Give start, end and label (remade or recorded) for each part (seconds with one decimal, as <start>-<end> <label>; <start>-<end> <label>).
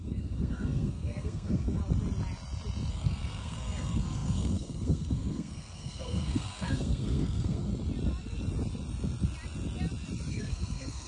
0.0-1.8 remade; 1.8-2.9 recorded; 2.9-7.7 remade; 7.7-10.3 recorded; 10.3-11.1 remade